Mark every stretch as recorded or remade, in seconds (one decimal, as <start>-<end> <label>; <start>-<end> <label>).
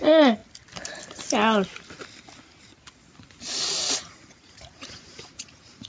0.0-0.4 remade; 0.4-3.9 recorded; 3.9-5.9 remade